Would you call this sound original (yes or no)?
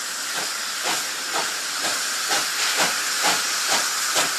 no